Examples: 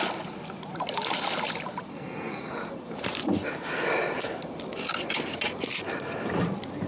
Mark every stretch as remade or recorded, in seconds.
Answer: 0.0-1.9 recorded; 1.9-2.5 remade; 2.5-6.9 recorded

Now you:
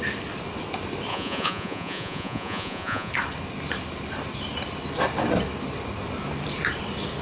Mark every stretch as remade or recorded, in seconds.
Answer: 0.0-1.1 recorded; 1.1-3.1 remade; 3.1-7.2 recorded

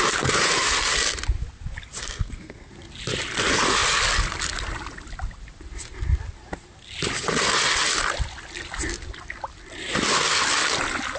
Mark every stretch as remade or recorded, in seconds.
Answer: 0.0-2.0 recorded; 2.0-2.7 remade; 2.7-11.2 recorded

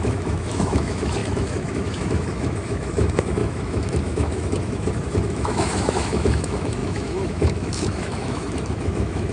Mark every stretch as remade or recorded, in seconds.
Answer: 0.0-9.3 remade

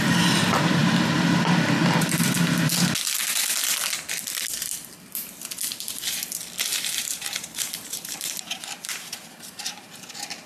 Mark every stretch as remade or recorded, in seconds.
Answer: 0.0-6.7 recorded; 6.7-10.1 remade; 10.1-10.5 recorded

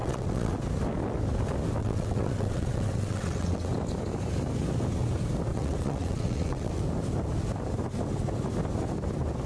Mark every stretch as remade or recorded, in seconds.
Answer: 0.0-0.5 remade; 0.5-1.8 recorded; 1.8-3.7 remade; 3.7-5.5 recorded; 5.5-6.8 remade; 6.8-9.5 recorded

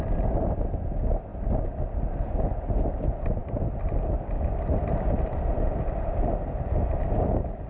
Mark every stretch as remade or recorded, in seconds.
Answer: 0.0-7.7 recorded